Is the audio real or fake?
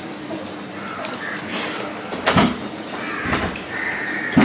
real